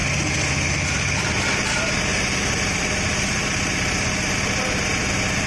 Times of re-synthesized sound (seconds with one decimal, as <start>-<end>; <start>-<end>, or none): 2.1-4.4